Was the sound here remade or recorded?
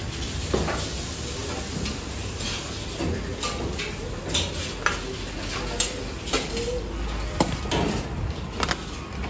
recorded